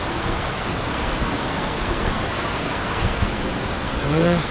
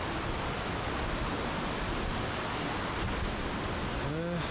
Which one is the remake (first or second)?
first